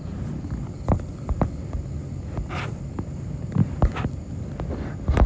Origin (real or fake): real